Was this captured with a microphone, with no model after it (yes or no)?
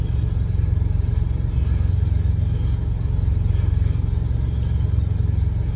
yes